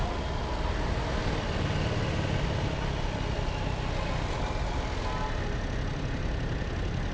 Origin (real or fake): real